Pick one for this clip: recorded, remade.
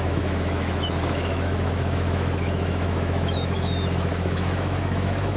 remade